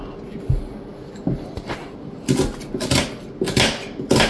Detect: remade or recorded recorded